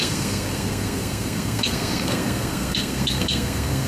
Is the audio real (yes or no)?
no